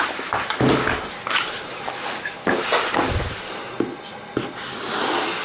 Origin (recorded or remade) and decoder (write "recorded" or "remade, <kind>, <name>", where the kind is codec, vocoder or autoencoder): recorded